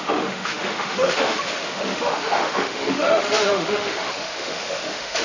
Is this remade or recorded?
remade